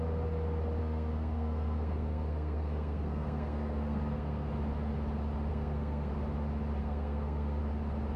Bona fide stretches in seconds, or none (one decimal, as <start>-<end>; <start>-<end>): 0.0-0.8; 4.5-5.5; 6.1-6.8; 7.6-8.2